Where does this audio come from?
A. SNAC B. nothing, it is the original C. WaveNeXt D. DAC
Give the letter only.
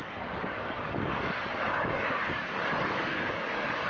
D